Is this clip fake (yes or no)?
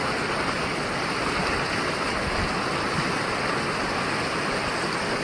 no